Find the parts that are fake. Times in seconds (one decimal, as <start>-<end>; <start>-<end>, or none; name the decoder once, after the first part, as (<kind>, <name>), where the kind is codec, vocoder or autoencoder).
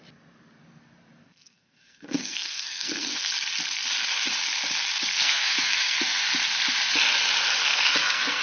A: 1.2-3.3 (codec, SNAC); 5.1-6.2; 7.6-8.4